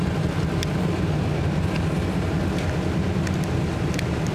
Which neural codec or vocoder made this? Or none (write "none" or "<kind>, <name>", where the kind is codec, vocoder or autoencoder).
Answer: none